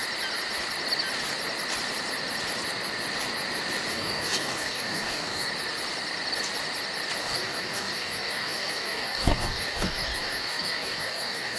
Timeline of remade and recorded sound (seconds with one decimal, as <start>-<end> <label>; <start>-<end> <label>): 0.0-3.9 recorded; 3.9-5.5 remade; 5.5-7.2 recorded; 7.2-11.6 remade